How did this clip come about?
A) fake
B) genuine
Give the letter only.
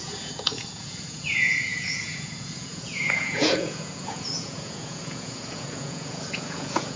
A